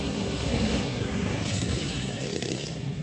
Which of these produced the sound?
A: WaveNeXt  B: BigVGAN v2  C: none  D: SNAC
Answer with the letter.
D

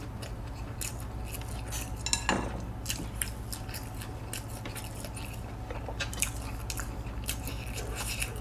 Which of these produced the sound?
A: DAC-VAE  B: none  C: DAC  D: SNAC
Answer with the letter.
B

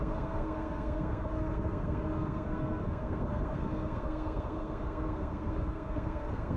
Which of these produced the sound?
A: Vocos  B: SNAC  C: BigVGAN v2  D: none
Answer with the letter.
B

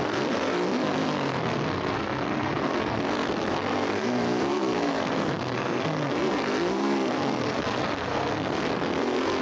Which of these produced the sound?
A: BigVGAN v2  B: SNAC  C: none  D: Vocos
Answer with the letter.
B